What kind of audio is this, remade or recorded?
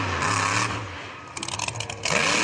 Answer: recorded